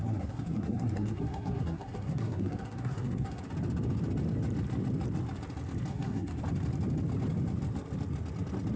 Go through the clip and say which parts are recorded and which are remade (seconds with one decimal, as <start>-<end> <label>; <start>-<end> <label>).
0.0-3.4 remade; 3.4-5.9 recorded; 5.9-6.4 remade; 6.4-8.8 recorded